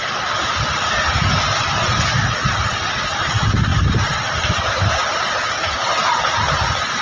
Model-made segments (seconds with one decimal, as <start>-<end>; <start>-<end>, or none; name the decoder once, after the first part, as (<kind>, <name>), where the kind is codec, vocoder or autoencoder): 3.7-5.9 (vocoder, BigVGAN v2)